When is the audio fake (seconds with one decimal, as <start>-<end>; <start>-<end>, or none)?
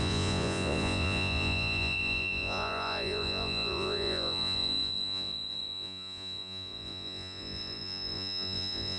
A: 0.0-9.0